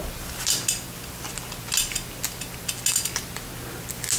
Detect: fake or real real